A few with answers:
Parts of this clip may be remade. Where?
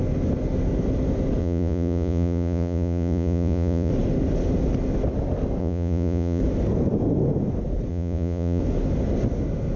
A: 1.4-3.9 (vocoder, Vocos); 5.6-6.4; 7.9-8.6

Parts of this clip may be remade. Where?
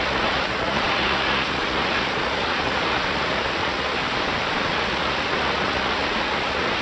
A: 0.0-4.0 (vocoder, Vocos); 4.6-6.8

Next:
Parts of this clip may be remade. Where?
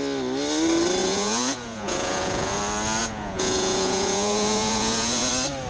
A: 1.0-2.6 (vocoder, Vocos); 3.0-5.3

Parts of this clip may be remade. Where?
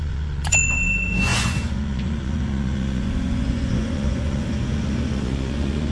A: 0.0-5.9 (vocoder, Vocos)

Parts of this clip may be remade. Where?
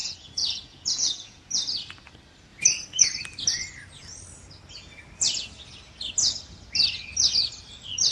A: 0.0-1.5 (vocoder, Vocos)